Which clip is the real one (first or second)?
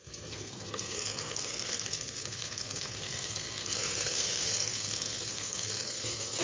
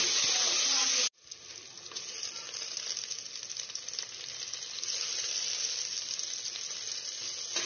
second